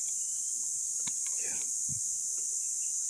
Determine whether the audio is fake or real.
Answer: real